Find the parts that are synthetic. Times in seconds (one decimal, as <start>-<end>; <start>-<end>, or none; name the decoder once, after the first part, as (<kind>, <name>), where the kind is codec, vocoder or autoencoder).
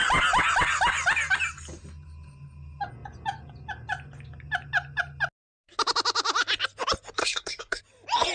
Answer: 7.2-7.8 (codec, SNAC)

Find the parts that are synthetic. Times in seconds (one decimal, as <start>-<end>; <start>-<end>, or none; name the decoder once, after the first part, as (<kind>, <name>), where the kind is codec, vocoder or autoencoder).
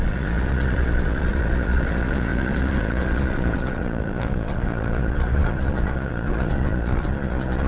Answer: 0.0-7.7 (vocoder, Vocos)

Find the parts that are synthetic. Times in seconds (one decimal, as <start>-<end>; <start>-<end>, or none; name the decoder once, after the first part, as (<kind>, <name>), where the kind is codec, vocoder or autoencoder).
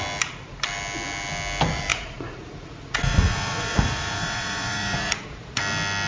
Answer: 1.9-5.6 (vocoder, Vocos)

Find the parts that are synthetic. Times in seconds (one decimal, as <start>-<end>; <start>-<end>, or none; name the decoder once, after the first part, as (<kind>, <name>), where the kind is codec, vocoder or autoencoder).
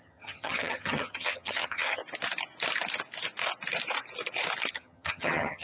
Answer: 0.0-2.0 (vocoder, HiFi-GAN); 4.7-5.6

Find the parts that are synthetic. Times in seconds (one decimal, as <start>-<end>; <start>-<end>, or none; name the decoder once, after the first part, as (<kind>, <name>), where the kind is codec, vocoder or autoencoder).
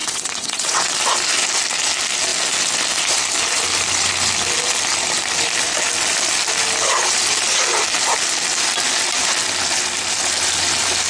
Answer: 0.0-0.9 (vocoder, WaveNeXt)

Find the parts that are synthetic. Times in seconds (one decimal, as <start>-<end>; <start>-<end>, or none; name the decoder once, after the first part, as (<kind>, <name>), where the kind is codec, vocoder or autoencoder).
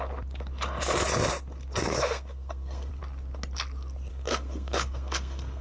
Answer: 1.8-3.0 (codec, SNAC); 4.1-5.6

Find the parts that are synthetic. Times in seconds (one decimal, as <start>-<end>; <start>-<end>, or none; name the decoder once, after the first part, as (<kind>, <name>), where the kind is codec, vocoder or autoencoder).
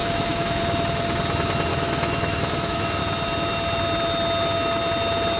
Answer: 0.0-0.6 (autoencoder, DAC-VAE); 1.7-3.0